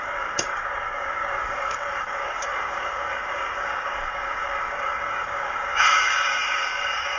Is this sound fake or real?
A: fake